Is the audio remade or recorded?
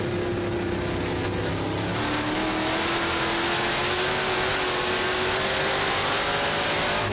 recorded